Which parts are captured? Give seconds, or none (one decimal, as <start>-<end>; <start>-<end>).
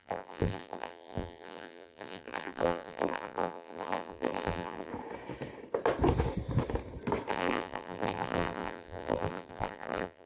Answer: 4.9-7.3